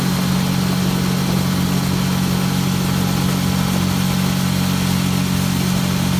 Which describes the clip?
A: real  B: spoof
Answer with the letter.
A